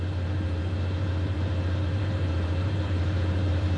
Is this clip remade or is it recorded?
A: remade